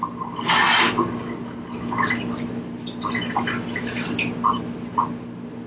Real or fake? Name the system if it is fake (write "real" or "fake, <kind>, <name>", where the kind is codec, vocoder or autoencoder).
real